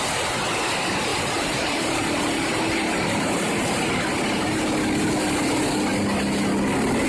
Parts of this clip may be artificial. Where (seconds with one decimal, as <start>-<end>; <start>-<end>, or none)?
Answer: 1.1-3.9